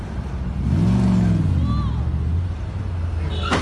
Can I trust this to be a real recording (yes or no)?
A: yes